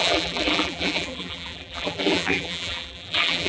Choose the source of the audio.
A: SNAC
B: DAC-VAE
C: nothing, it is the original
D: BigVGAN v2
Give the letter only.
D